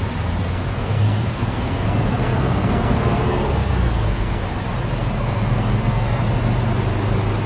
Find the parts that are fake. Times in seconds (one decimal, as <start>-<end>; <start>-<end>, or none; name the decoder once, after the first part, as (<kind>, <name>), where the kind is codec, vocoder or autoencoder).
0.4-4.4 (codec, SNAC); 5.0-6.2